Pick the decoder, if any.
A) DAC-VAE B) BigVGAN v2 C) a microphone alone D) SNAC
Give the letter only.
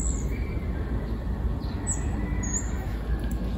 B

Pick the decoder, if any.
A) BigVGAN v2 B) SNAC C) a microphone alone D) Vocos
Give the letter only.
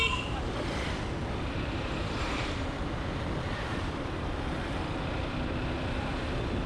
A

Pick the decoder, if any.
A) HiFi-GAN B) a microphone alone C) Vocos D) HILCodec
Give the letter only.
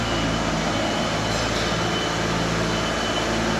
B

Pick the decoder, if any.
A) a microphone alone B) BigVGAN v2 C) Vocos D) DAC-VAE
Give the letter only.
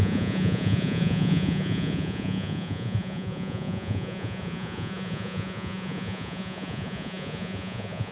C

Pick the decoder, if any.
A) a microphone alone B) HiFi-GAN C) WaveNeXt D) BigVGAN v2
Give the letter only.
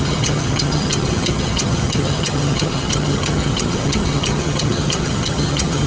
B